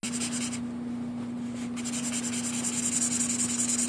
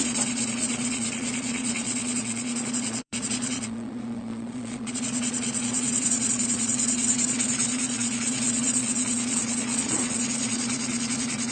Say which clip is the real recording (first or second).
first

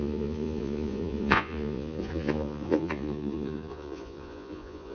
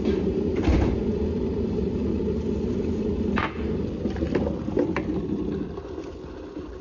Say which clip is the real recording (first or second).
second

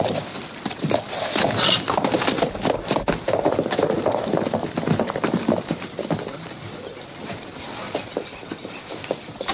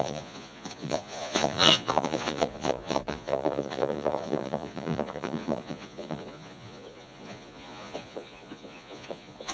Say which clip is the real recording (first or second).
first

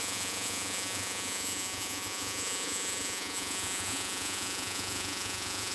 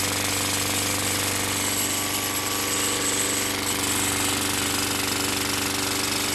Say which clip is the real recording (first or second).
second